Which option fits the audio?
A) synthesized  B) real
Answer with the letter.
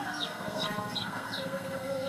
A